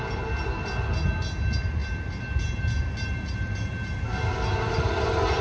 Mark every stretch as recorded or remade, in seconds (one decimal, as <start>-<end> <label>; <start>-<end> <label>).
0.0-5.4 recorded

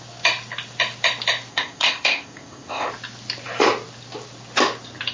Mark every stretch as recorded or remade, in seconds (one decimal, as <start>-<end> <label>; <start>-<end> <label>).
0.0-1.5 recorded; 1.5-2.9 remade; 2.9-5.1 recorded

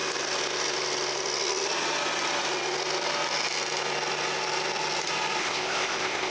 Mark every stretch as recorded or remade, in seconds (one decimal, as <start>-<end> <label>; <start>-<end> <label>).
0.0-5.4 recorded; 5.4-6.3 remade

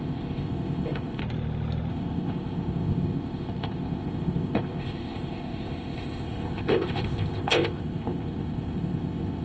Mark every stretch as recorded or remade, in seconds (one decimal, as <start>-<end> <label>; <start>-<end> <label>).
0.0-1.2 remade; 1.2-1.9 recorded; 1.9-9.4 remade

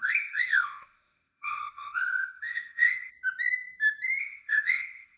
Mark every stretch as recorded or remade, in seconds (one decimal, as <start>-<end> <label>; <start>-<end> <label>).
0.0-3.1 remade; 3.1-4.2 recorded; 4.2-5.2 remade

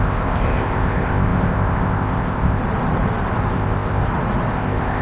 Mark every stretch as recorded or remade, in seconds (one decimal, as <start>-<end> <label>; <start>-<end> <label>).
0.0-2.6 remade; 2.6-3.5 recorded; 3.5-4.0 remade; 4.0-4.5 recorded; 4.5-5.0 remade

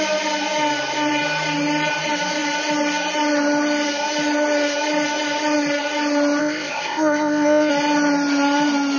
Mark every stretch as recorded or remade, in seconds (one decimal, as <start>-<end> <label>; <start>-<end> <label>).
0.0-6.4 recorded; 6.4-7.7 remade; 7.7-9.0 recorded

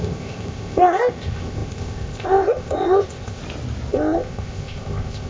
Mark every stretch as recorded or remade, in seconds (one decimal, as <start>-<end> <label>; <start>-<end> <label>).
0.0-3.4 remade; 3.4-3.9 recorded; 3.9-5.3 remade